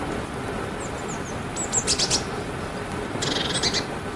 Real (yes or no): yes